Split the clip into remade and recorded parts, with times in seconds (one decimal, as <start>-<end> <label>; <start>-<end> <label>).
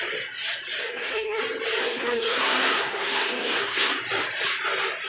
0.0-0.8 recorded; 0.8-1.4 remade; 1.4-1.8 recorded; 1.8-3.9 remade; 3.9-5.1 recorded